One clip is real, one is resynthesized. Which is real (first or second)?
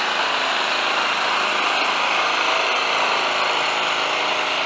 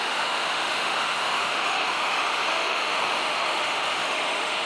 first